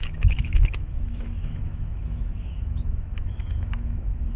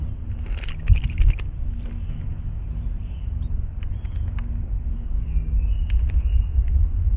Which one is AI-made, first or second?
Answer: first